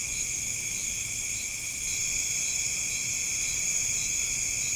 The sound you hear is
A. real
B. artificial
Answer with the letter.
A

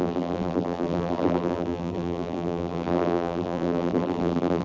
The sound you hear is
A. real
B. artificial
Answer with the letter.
B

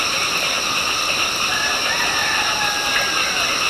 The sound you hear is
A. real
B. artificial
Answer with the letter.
A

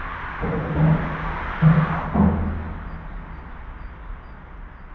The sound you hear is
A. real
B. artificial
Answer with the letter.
A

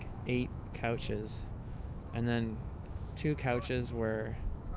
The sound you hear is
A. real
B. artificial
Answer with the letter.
B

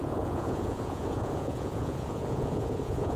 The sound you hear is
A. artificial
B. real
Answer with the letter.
A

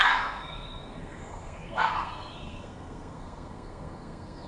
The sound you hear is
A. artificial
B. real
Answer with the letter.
A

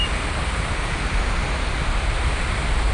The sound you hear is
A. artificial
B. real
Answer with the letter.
B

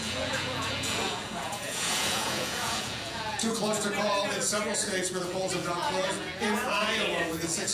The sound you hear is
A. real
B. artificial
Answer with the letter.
B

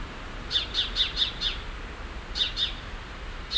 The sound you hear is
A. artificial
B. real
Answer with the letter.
B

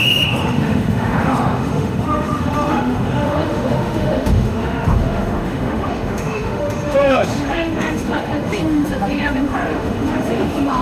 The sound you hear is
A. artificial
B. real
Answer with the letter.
A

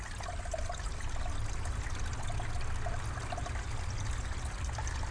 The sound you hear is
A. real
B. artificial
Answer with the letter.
A